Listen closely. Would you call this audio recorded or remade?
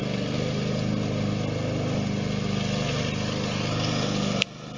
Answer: recorded